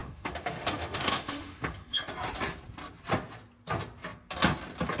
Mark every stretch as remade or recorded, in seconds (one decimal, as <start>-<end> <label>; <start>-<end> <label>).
0.0-2.1 remade; 2.1-5.0 recorded